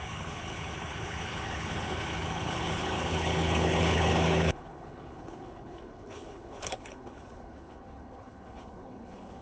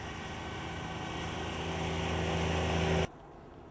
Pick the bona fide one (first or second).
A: second